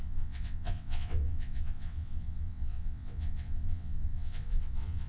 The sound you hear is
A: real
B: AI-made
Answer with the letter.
B